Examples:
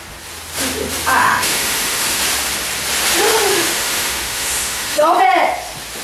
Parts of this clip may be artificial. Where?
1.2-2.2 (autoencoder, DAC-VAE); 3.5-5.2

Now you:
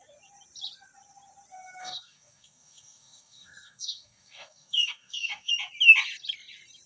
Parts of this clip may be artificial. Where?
1.8-5.5 (codec, DAC)

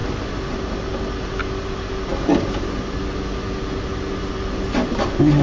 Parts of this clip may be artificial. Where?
none

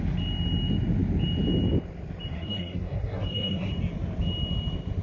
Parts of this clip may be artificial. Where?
2.3-3.7 (codec, SNAC)

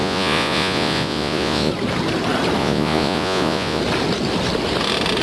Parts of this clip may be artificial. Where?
0.0-1.7 (vocoder, Vocos); 2.6-3.8

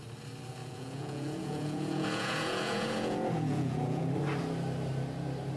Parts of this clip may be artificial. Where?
0.6-4.0 (vocoder, Vocos)

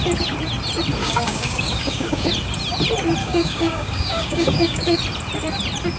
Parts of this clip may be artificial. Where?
1.0-2.3 (codec, DAC); 3.2-5.0